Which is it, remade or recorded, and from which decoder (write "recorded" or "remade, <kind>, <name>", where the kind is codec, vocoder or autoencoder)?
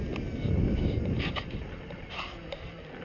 recorded